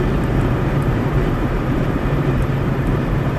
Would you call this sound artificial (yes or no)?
yes